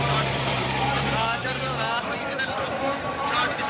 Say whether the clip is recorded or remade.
remade